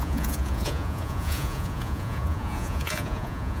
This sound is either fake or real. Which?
fake